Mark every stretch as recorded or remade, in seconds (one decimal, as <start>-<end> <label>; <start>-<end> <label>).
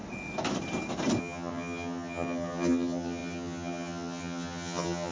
0.0-1.2 recorded; 1.2-5.1 remade